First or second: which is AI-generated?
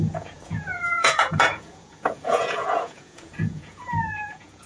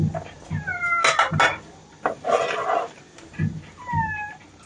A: first